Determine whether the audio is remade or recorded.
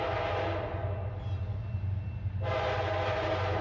recorded